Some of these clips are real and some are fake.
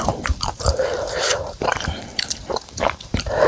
fake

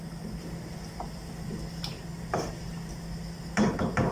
real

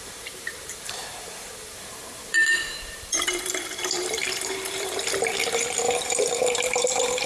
fake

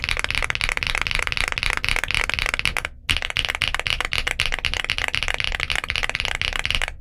real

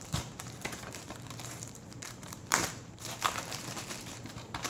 fake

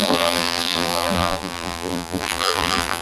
fake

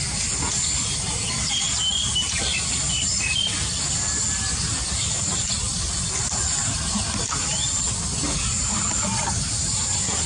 real